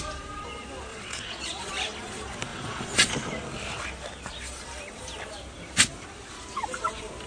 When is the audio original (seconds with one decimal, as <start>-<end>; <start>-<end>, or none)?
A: 0.0-0.9; 1.7-2.5; 3.1-7.3